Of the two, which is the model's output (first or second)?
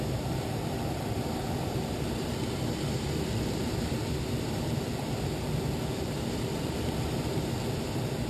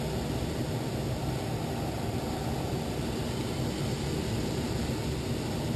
first